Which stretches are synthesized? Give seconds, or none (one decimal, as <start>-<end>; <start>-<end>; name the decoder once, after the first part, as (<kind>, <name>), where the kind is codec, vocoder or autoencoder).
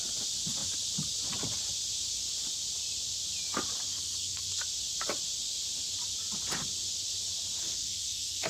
3.9-4.6 (codec, SNAC); 7.6-8.5